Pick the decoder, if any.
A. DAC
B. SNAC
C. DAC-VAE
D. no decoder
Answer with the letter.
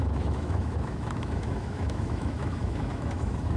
C